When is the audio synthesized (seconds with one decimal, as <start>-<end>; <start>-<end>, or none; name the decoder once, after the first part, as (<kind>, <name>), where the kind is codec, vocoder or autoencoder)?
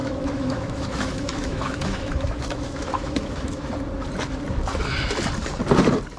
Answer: 0.0-3.7 (autoencoder, DAC-VAE)